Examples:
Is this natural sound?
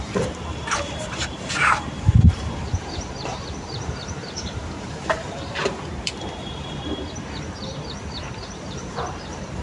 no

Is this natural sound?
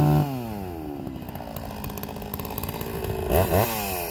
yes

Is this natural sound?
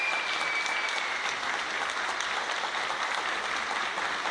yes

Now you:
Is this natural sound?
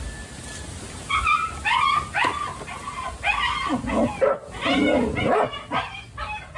yes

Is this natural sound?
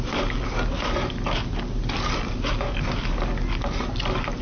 yes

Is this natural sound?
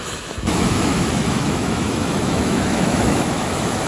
no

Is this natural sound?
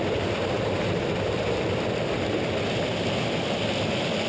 yes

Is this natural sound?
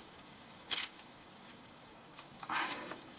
no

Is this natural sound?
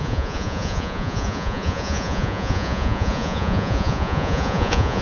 no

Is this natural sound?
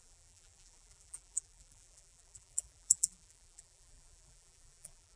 no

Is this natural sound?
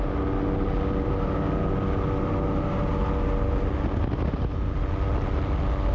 yes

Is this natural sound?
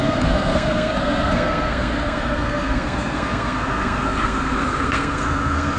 no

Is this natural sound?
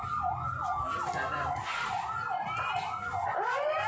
yes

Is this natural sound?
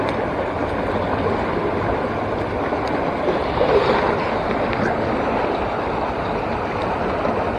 yes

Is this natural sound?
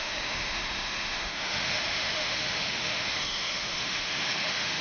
no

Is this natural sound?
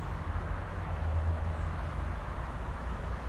no